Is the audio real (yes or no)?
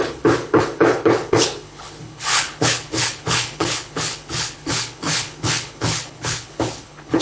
no